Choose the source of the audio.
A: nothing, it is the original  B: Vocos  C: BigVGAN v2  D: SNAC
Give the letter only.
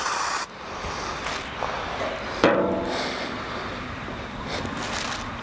C